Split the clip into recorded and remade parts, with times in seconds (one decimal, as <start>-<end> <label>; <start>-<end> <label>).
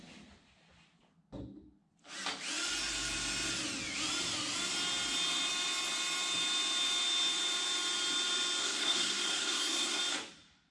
0.0-8.6 recorded; 8.6-10.0 remade; 10.0-10.7 recorded